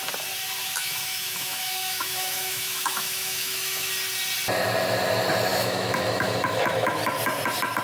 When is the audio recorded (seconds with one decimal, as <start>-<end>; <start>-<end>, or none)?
0.0-0.6; 3.9-5.5; 7.0-7.8